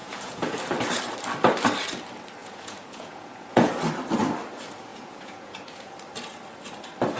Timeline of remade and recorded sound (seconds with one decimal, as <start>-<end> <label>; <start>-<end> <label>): 0.0-0.6 remade; 0.6-2.4 recorded; 2.4-3.7 remade; 3.7-4.9 recorded; 4.9-5.9 remade; 5.9-7.2 recorded